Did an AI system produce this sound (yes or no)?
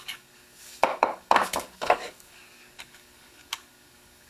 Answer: yes